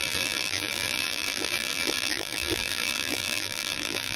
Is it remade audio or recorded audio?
remade